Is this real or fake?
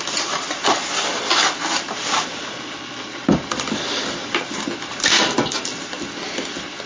real